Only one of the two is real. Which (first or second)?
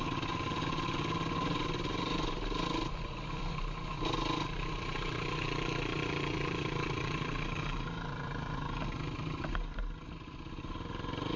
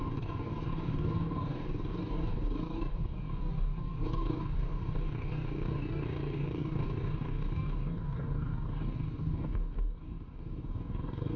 first